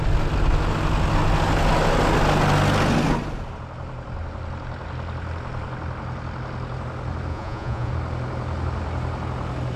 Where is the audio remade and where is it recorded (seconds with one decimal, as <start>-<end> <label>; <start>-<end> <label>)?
0.0-7.3 recorded; 7.3-7.9 remade; 7.9-9.8 recorded